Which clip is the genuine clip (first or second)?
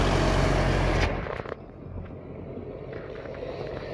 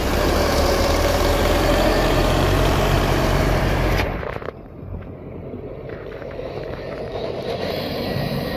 first